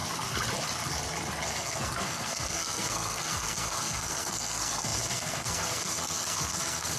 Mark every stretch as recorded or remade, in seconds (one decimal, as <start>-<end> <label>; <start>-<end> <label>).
0.0-1.5 recorded; 1.5-7.0 remade

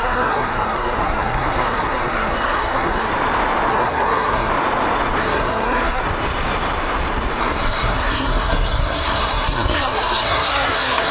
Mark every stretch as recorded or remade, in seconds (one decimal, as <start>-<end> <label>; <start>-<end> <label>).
0.0-3.1 remade; 3.1-3.7 recorded; 3.7-4.5 remade; 4.5-5.2 recorded; 5.2-6.0 remade; 6.0-7.4 recorded; 7.4-11.1 remade

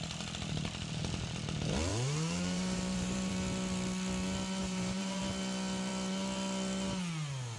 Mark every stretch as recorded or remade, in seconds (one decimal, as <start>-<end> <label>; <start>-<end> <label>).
0.0-1.9 recorded; 1.9-3.3 remade; 3.3-4.6 recorded; 4.6-5.2 remade; 5.2-7.6 recorded

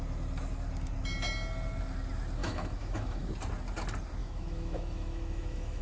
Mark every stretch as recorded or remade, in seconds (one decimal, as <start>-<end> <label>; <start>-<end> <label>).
0.0-2.4 recorded; 2.4-3.3 remade; 3.3-4.2 recorded; 4.2-5.8 remade